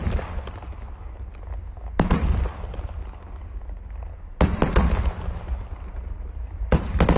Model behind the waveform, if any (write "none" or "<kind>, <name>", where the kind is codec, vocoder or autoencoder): none